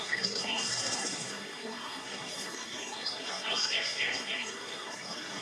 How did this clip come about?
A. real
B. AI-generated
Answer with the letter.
B